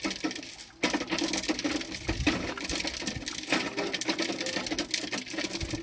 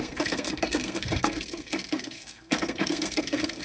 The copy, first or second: second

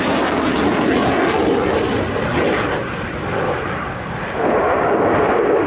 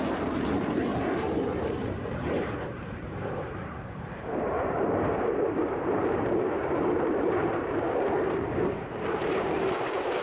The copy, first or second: second